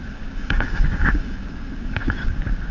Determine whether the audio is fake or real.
fake